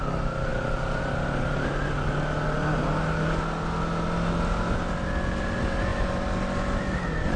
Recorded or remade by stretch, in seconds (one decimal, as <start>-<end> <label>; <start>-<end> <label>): 0.0-7.4 recorded